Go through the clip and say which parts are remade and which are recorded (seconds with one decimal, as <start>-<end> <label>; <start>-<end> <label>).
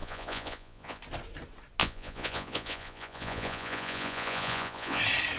0.0-1.0 remade; 1.0-1.8 recorded; 1.8-5.0 remade; 5.0-5.4 recorded